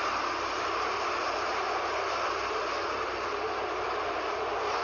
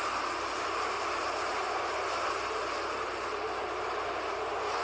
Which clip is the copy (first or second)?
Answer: first